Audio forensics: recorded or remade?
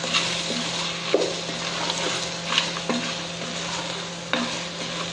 recorded